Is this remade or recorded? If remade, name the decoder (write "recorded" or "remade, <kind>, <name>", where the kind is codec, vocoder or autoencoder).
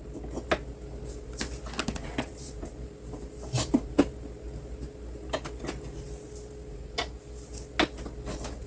recorded